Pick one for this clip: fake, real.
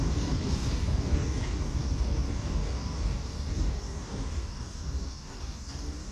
fake